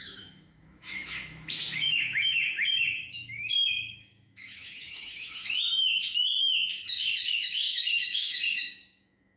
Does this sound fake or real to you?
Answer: fake